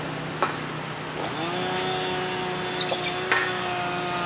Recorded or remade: recorded